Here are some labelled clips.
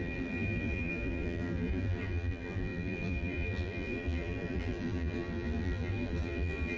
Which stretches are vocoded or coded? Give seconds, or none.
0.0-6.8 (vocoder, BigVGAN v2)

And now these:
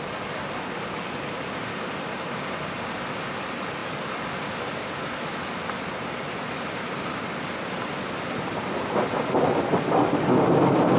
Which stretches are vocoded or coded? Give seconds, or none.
none

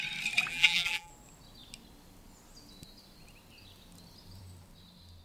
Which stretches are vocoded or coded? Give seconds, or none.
0.5-1.1 (vocoder, BigVGAN v2)

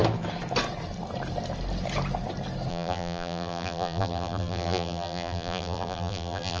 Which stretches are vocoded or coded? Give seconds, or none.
2.7-6.6 (vocoder, BigVGAN v2)

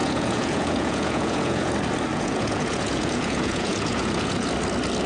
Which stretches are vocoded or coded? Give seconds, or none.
0.0-1.7 (vocoder, Vocos); 2.1-4.5

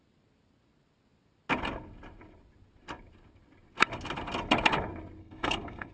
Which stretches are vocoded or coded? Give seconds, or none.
5.2-5.9 (codec, SNAC)

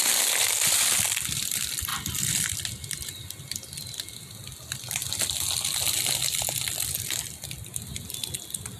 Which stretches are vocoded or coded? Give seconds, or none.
none

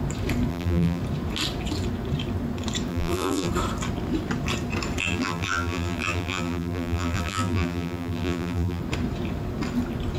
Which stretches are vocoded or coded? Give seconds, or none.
0.5-1.0 (vocoder, BigVGAN v2); 2.9-3.5; 5.0-8.8